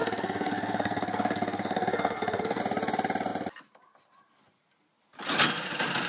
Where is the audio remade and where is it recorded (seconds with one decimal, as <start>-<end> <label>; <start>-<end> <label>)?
0.0-2.6 remade; 2.6-6.1 recorded